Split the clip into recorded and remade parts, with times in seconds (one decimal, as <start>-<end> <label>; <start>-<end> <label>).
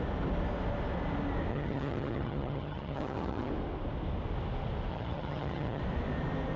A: 0.0-1.5 recorded; 1.5-3.5 remade; 3.5-4.9 recorded; 4.9-5.8 remade; 5.8-6.6 recorded